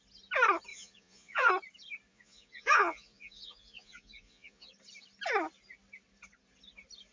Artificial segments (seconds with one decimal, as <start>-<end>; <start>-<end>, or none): 0.7-1.5; 2.1-4.7